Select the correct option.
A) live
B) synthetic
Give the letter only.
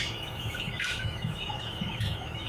B